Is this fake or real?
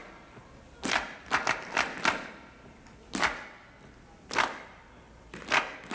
real